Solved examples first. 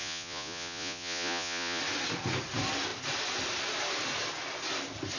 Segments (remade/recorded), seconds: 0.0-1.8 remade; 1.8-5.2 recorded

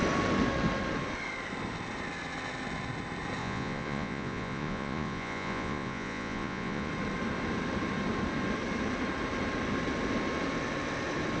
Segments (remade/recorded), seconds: 0.0-3.4 recorded; 3.4-6.9 remade; 6.9-11.4 recorded

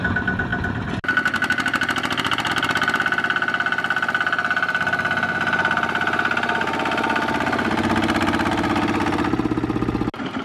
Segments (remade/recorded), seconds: 0.0-10.4 recorded

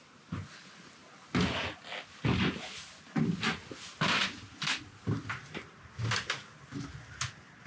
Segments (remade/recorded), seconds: 0.0-7.7 recorded